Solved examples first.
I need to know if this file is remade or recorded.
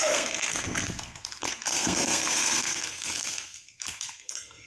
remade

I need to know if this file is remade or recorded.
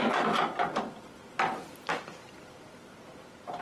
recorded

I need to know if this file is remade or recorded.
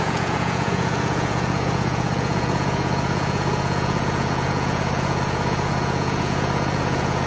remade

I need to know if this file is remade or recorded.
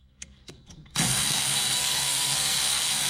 remade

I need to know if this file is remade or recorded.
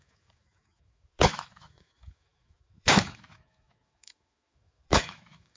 remade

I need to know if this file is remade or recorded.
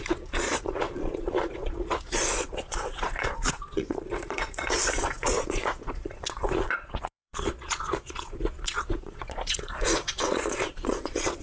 remade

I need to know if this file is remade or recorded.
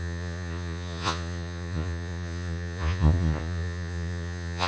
remade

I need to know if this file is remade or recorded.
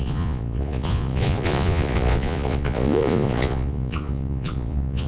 remade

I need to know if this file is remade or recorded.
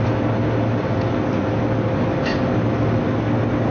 recorded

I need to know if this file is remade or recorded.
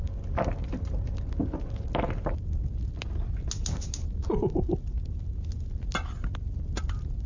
recorded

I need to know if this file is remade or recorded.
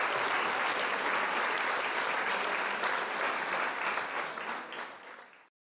recorded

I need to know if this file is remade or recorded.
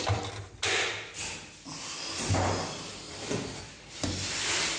recorded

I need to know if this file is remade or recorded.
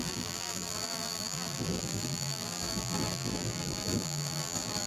remade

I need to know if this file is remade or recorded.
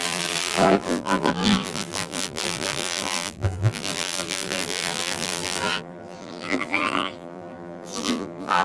remade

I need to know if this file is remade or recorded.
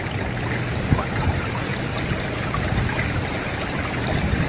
recorded